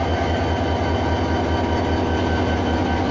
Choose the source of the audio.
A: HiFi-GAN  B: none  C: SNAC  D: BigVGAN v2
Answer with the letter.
B